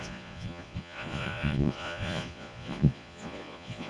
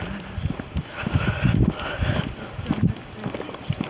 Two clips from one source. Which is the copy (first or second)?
first